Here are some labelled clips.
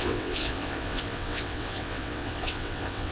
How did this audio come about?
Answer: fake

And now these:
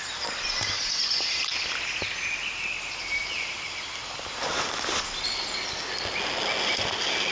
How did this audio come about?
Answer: real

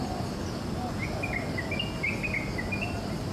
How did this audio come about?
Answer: real